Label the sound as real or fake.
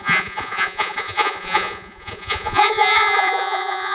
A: fake